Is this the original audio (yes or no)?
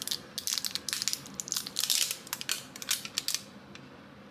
yes